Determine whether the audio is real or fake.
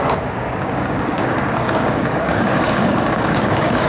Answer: fake